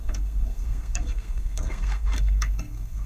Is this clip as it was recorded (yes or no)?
no